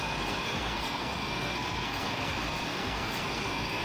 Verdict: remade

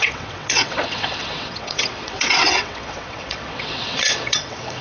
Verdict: remade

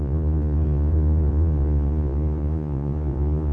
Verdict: remade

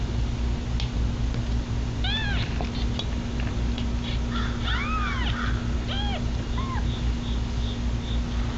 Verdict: recorded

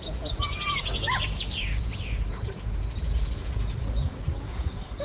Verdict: remade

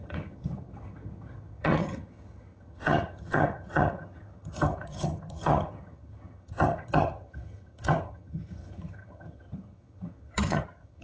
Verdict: remade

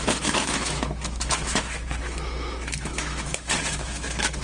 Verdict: remade